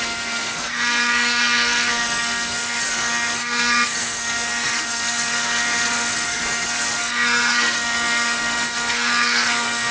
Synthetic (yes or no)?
yes